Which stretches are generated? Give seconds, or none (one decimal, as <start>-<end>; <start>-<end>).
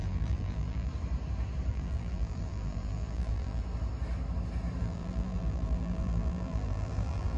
0.0-0.9; 1.7-3.6; 4.8-7.4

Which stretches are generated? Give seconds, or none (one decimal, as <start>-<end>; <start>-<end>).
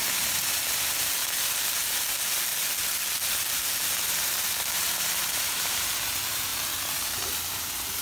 0.0-2.5; 3.2-8.0